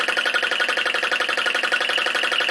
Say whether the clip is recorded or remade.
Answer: recorded